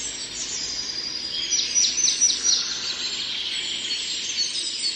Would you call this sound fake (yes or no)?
no